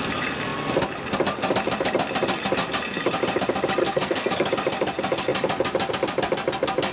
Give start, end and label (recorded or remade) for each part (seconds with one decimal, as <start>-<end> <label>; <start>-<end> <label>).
0.0-3.8 recorded; 3.8-4.5 remade; 4.5-6.9 recorded